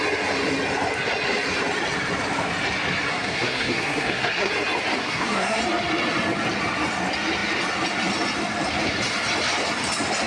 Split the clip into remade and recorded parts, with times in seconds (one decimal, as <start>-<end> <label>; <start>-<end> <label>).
0.0-3.1 recorded; 3.1-4.5 remade; 4.5-5.0 recorded; 5.0-5.6 remade; 5.6-10.3 recorded